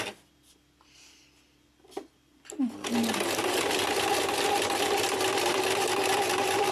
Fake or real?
real